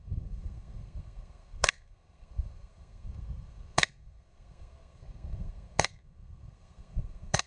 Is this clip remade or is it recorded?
remade